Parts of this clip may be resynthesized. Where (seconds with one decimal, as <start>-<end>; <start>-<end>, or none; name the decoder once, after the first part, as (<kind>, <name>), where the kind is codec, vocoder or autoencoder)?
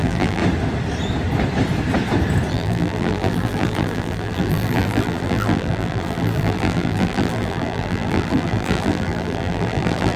0.0-0.4 (vocoder, BigVGAN v2); 2.5-10.2